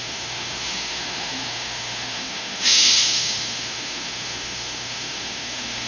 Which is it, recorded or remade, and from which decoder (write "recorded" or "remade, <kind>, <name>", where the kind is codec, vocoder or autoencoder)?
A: remade, autoencoder, DAC-VAE